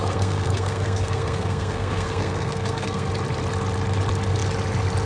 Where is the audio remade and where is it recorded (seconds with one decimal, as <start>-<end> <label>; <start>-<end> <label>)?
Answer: 0.0-3.1 remade; 3.1-5.1 recorded